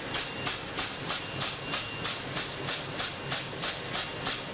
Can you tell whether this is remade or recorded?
recorded